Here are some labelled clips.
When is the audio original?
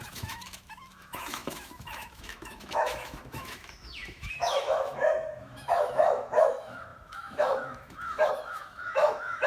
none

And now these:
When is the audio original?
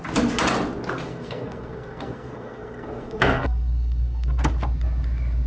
0.0-1.1; 4.4-5.5